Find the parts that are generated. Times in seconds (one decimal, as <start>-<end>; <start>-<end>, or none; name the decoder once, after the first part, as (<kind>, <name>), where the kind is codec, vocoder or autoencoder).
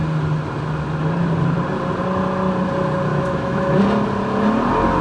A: 3.1-3.8 (autoencoder, DAC-VAE)